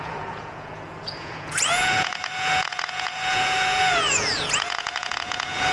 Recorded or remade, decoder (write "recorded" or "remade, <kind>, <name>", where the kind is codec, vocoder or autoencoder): remade, vocoder, Vocos